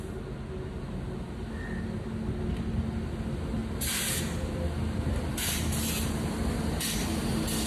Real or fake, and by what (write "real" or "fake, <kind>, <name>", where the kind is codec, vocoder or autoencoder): real